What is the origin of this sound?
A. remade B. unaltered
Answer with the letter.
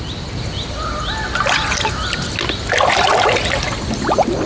B